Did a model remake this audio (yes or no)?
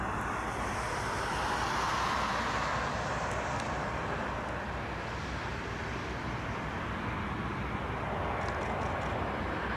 no